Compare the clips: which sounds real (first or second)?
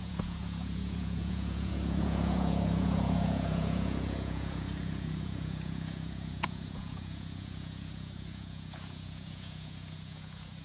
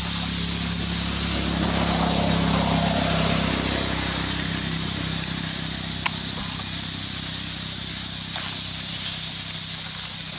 second